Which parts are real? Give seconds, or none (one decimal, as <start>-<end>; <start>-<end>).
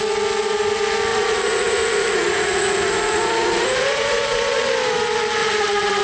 0.0-1.1; 4.7-5.4